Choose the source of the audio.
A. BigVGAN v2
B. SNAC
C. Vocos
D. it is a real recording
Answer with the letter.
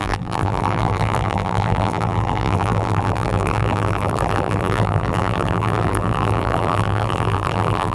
A